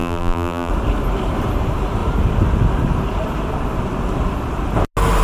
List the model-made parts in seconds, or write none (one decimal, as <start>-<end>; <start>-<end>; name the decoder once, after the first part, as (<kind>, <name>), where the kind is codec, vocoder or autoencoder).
0.0-0.7 (vocoder, BigVGAN v2)